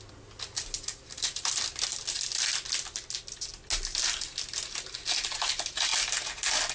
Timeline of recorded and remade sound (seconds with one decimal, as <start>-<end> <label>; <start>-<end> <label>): 0.0-6.7 recorded